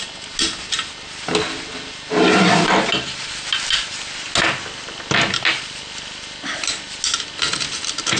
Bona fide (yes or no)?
yes